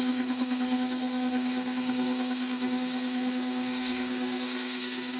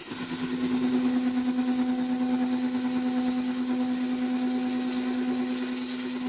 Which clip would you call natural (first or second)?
second